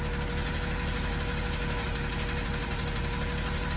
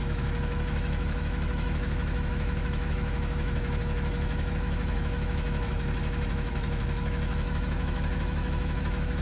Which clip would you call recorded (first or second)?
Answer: first